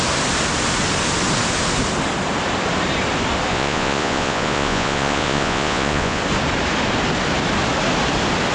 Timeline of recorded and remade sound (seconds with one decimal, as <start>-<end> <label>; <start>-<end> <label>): 0.0-3.5 recorded; 3.5-6.2 remade; 6.2-8.5 recorded